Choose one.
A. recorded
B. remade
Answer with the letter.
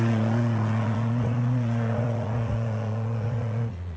B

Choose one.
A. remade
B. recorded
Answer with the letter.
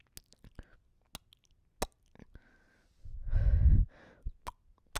B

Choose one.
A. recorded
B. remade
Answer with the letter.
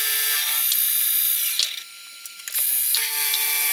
A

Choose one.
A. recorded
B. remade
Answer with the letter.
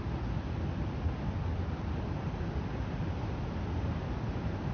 A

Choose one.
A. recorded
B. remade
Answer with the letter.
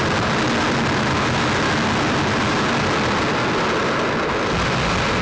A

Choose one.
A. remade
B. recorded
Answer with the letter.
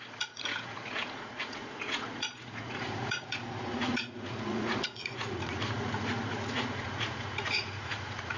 A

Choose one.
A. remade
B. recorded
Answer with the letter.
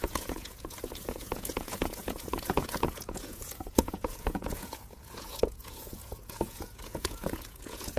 A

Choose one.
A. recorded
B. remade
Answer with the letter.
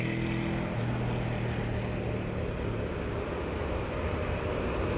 A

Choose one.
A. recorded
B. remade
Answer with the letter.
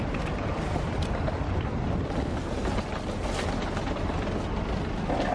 A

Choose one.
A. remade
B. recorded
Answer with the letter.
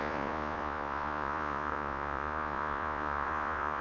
A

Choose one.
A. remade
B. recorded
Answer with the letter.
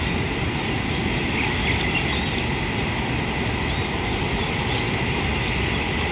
B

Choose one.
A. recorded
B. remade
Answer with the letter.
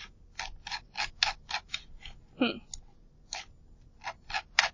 A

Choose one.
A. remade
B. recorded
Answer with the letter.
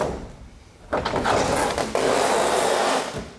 B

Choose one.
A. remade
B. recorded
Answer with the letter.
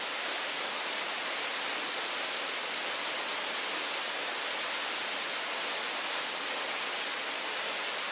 B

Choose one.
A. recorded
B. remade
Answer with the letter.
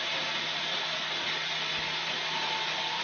A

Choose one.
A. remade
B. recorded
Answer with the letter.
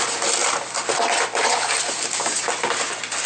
B